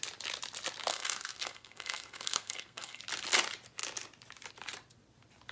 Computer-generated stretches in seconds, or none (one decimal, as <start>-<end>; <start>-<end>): 0.9-3.0

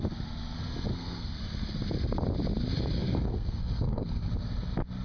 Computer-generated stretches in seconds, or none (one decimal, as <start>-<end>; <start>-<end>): 0.9-1.4; 3.0-4.3

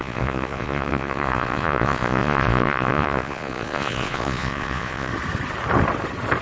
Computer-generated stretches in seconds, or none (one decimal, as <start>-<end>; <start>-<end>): 0.0-5.1

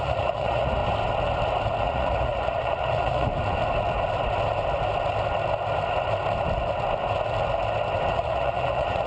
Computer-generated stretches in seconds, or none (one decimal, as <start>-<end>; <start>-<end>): 0.0-0.8; 1.8-3.3; 8.1-9.1

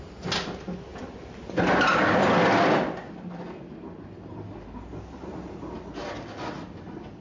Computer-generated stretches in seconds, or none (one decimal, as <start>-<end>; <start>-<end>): none

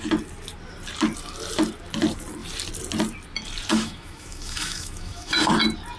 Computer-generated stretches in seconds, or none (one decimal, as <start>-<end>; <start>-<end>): 3.7-5.5

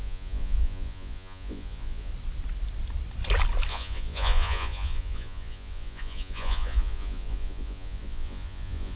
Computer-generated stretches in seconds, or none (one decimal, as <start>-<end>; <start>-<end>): 0.0-2.1; 3.7-9.0

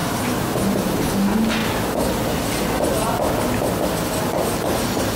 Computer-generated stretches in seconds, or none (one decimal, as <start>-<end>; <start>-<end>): 0.0-1.1